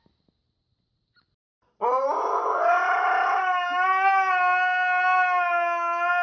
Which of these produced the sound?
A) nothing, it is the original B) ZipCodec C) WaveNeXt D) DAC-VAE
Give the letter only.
A